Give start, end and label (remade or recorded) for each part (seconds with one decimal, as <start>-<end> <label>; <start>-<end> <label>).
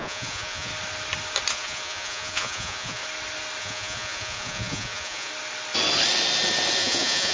0.0-0.7 remade; 0.7-1.5 recorded; 1.5-3.0 remade; 3.0-3.6 recorded; 3.6-5.3 remade; 5.3-6.8 recorded; 6.8-7.3 remade